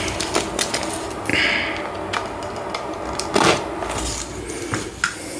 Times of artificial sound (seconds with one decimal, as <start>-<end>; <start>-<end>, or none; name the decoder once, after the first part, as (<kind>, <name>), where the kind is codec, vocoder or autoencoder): none